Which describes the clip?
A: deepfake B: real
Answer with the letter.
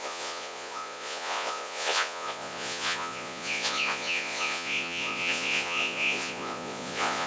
A